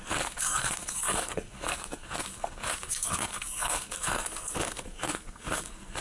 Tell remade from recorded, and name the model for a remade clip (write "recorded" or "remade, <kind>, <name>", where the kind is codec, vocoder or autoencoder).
remade, codec, SNAC